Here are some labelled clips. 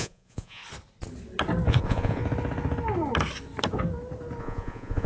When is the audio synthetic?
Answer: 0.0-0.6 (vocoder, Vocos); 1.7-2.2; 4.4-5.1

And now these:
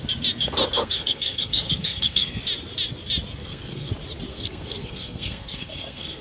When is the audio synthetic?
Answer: 0.8-2.4 (codec, SNAC); 3.4-3.9; 4.3-6.2

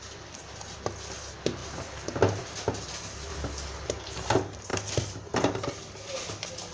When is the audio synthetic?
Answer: 3.3-4.3 (vocoder, BigVGAN v2); 4.7-5.7

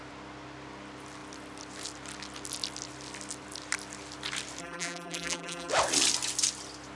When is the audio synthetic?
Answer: 4.6-5.7 (vocoder, BigVGAN v2)

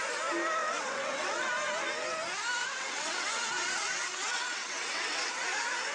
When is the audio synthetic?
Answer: 0.6-1.5 (vocoder, WaveNeXt); 2.6-5.3

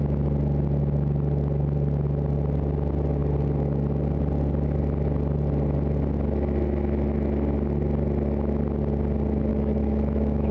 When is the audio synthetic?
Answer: 9.5-10.5 (autoencoder, DAC-VAE)

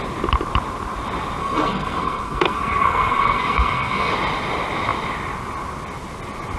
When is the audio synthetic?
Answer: 1.4-4.1 (codec, SNAC)

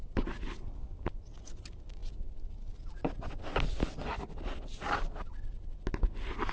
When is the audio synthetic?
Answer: none